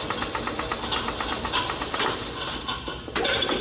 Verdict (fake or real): real